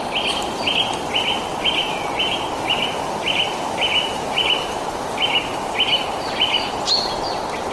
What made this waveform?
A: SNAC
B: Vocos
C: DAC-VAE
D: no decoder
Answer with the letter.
D